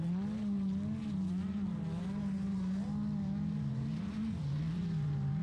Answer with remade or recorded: recorded